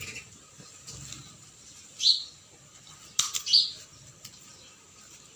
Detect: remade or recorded remade